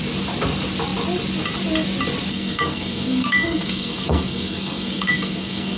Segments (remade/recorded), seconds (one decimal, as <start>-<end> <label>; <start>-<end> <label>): 0.0-2.3 recorded; 2.3-5.8 remade